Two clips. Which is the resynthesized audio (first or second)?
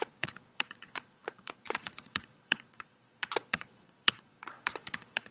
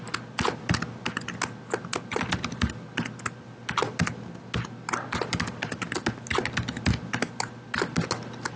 first